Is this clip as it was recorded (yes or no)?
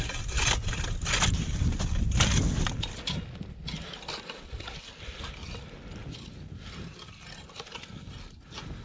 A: yes